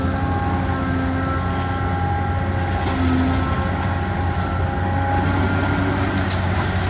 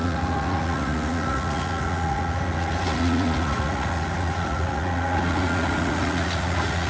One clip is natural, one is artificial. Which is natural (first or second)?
first